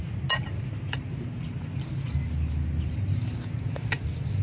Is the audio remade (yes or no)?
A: no